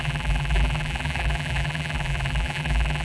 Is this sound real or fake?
fake